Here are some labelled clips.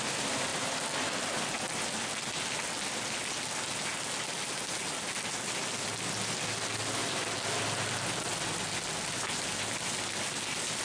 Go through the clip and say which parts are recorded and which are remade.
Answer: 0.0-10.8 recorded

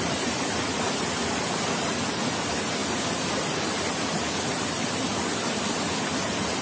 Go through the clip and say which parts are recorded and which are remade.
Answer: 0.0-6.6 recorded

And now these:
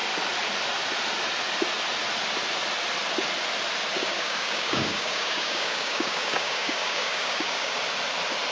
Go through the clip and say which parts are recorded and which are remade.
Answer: 0.0-4.0 recorded; 4.0-7.8 remade; 7.8-8.5 recorded